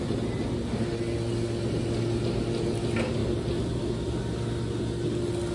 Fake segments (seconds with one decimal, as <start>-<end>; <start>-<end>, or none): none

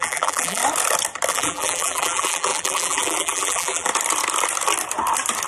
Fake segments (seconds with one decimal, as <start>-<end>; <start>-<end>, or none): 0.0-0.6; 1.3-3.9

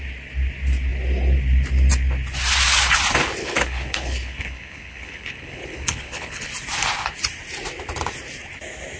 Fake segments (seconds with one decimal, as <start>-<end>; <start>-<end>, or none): 3.4-6.5